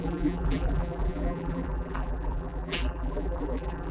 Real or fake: fake